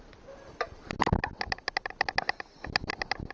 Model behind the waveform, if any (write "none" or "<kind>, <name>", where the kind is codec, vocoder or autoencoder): none